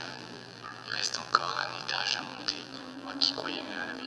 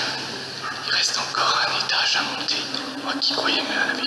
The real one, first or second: second